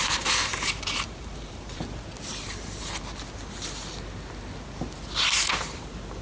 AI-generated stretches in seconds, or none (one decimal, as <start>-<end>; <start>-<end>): 0.5-1.8